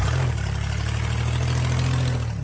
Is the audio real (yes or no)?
yes